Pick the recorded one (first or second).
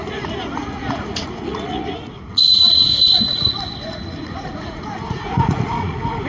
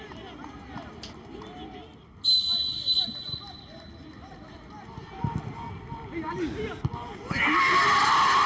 second